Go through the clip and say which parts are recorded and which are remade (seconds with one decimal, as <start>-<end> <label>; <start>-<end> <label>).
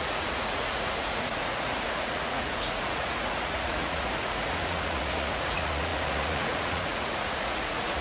0.0-8.0 remade